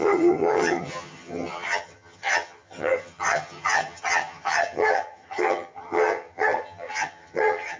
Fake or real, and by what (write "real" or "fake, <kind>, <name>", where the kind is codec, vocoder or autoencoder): fake, vocoder, HiFi-GAN